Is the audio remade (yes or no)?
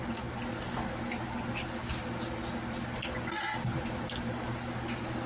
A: no